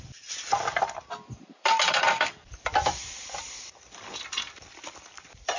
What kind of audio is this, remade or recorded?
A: remade